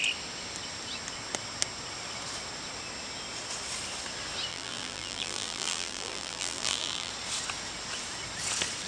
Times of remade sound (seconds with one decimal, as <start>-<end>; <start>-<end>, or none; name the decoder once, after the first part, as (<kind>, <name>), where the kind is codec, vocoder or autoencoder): 4.5-7.1 (vocoder, BigVGAN v2)